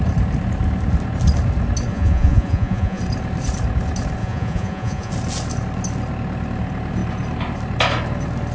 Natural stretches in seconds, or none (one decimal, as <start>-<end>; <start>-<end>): 0.0-1.9; 3.0-4.2; 5.1-8.5